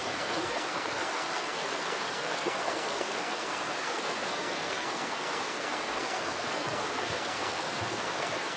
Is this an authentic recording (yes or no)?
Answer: no